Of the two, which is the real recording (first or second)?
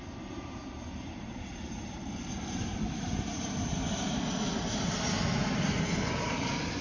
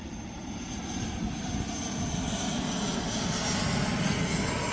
second